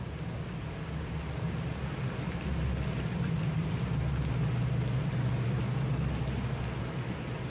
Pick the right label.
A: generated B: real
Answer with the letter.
B